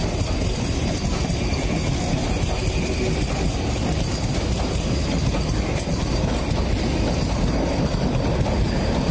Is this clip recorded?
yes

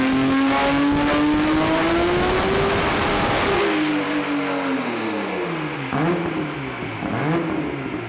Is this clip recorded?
yes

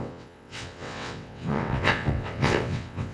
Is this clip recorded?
no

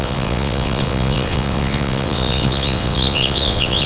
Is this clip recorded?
no